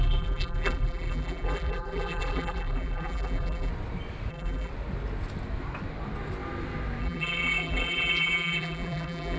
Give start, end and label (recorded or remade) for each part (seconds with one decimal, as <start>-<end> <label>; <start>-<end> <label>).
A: 0.0-3.7 remade; 3.7-4.3 recorded; 4.3-4.7 remade; 4.7-7.0 recorded; 7.0-9.4 remade